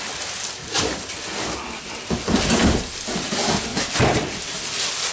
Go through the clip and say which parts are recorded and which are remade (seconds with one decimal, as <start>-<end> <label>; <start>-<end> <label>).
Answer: 0.0-5.1 recorded